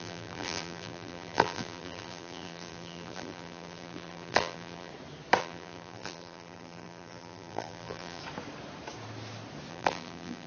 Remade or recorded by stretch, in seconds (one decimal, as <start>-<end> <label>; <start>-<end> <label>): 0.0-4.9 remade; 4.9-5.4 recorded; 5.4-8.2 remade; 8.2-9.7 recorded; 9.7-10.5 remade